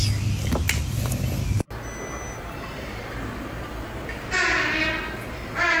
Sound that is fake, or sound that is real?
real